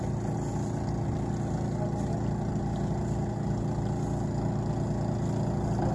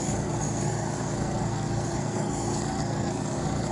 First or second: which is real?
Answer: first